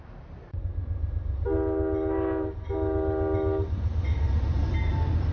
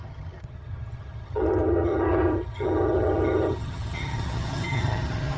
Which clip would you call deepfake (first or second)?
second